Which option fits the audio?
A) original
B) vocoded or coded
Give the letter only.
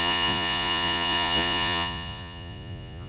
B